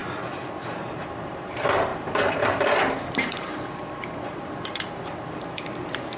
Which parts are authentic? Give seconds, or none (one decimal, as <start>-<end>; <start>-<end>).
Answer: 0.0-0.9